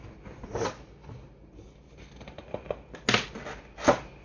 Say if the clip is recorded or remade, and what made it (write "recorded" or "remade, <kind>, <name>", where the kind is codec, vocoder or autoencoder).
recorded